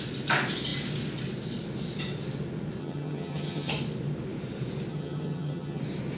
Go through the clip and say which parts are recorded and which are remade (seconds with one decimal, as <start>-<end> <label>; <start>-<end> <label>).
0.0-2.8 recorded; 2.8-3.7 remade; 3.7-4.9 recorded; 4.9-5.8 remade; 5.8-6.2 recorded